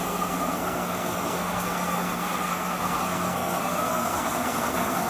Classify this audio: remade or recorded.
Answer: remade